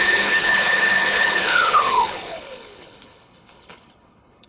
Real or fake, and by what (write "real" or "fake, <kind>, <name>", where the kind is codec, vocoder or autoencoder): fake, codec, HILCodec